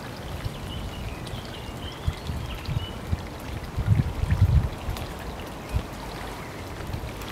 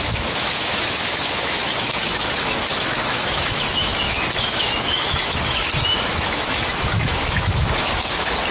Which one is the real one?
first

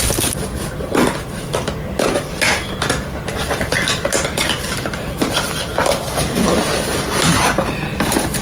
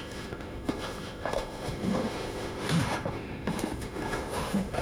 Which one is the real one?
first